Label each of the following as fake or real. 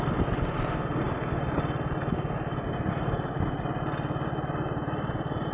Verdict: real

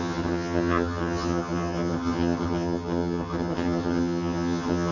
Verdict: fake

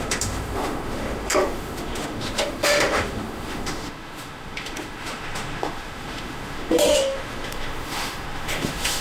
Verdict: fake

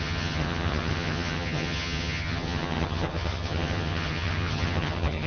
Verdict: fake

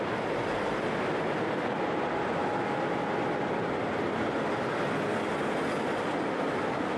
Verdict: real